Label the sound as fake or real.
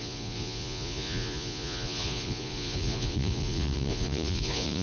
fake